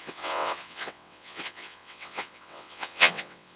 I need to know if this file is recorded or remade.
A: remade